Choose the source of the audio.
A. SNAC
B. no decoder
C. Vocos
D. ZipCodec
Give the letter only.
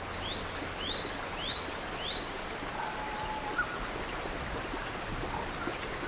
B